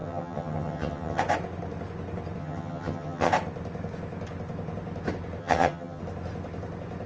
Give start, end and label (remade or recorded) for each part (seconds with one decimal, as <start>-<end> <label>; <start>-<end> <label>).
0.0-1.2 remade; 1.2-2.4 recorded; 2.4-3.3 remade; 3.3-5.4 recorded; 5.4-6.0 remade; 6.0-7.1 recorded

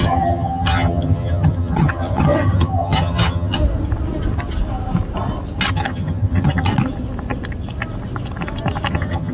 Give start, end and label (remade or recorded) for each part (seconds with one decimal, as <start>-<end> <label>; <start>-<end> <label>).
0.0-3.6 remade; 3.6-5.7 recorded; 5.7-6.7 remade; 6.7-8.9 recorded; 8.9-9.3 remade

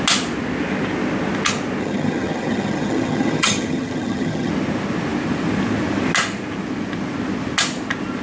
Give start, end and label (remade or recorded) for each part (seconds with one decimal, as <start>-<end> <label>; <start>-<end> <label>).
0.0-1.8 recorded; 1.8-4.5 remade; 4.5-8.2 recorded

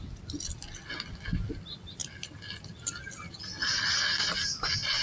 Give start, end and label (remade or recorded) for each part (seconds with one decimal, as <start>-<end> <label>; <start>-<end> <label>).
0.0-5.0 recorded

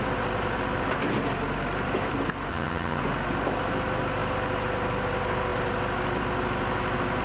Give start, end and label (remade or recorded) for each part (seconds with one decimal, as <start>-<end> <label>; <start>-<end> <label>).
0.0-2.5 recorded; 2.5-3.0 remade; 3.0-7.2 recorded

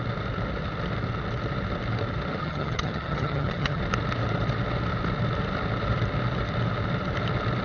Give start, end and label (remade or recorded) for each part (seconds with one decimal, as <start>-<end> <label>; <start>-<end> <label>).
0.0-2.4 recorded; 2.4-3.8 remade; 3.8-7.6 recorded